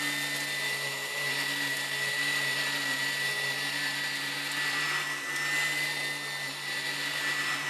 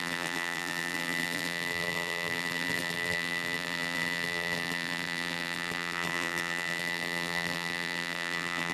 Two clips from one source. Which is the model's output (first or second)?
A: second